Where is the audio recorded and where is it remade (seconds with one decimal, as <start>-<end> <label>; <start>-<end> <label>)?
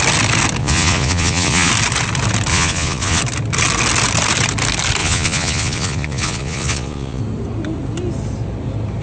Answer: 0.0-0.6 recorded; 0.6-1.7 remade; 1.7-2.5 recorded; 2.5-3.2 remade; 3.2-5.0 recorded; 5.0-7.2 remade; 7.2-9.0 recorded